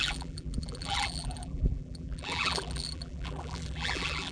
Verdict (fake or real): fake